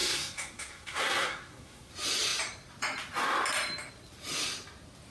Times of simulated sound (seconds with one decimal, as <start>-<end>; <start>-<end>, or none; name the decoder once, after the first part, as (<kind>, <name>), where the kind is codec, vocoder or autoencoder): 0.0-1.9 (codec, SNAC)